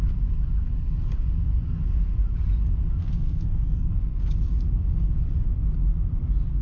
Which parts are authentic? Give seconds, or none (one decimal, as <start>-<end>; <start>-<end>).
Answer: 0.0-3.0; 4.2-6.6